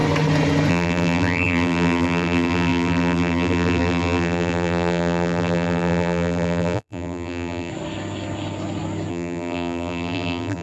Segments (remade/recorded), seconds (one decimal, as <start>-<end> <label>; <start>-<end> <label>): 0.0-0.7 recorded; 0.7-7.7 remade; 7.7-9.1 recorded; 9.1-10.6 remade